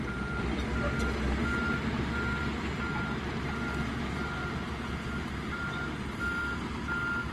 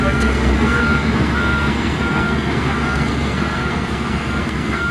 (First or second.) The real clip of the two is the first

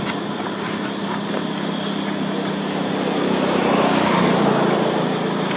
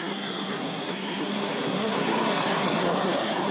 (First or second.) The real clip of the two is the first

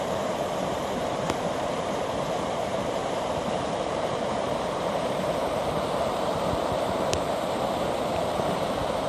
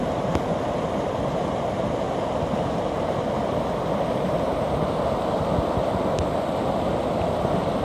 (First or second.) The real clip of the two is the second